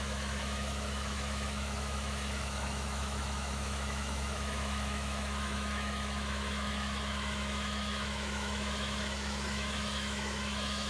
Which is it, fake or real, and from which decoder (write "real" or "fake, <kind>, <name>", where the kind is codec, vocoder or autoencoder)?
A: fake, autoencoder, DAC-VAE